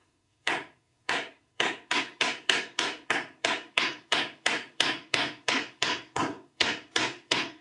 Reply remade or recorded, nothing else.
remade